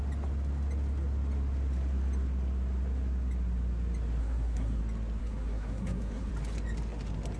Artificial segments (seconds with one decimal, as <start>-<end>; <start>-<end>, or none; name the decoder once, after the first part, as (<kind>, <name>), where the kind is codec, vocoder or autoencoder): 4.2-4.8 (codec, SNAC); 5.2-6.3